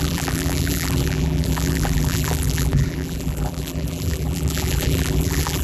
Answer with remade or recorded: remade